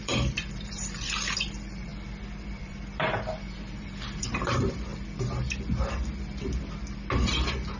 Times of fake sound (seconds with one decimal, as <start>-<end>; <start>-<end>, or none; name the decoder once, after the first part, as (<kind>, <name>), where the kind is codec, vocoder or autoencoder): 0.0-1.9 (vocoder, BigVGAN v2); 2.6-4.9